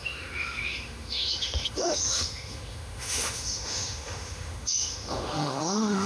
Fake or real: fake